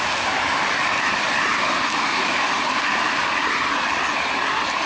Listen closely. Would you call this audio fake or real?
real